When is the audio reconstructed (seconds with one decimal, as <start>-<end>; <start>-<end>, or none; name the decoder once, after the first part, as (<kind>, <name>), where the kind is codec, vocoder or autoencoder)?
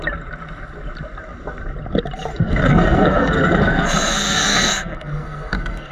2.3-5.9 (codec, SNAC)